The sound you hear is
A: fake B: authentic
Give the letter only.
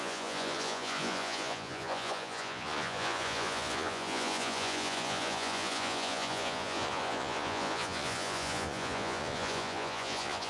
A